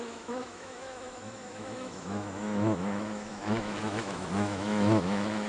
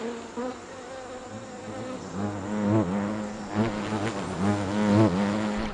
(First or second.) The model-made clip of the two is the first